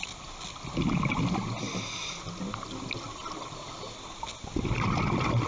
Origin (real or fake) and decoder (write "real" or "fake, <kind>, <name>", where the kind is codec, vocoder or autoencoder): real